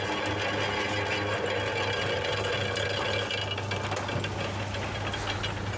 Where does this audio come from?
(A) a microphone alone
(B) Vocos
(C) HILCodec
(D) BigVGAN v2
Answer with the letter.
A